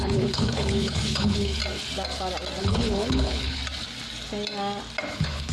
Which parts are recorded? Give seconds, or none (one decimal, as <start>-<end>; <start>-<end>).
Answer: 1.6-2.6; 3.6-5.1